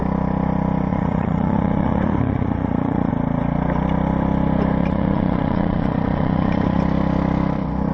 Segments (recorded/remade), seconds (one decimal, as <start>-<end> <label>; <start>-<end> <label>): 0.0-0.9 recorded; 0.9-3.1 remade; 3.1-4.8 recorded; 4.8-6.8 remade; 6.8-7.9 recorded